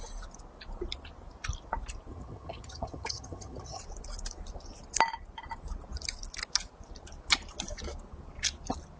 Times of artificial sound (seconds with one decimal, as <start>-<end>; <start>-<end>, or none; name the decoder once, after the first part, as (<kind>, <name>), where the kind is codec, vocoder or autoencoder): 2.1-3.8 (vocoder, HiFi-GAN)